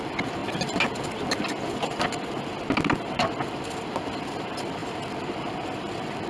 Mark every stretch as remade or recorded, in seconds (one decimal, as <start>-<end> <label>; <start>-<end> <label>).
0.0-6.3 recorded